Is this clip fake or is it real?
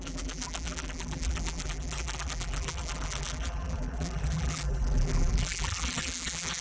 fake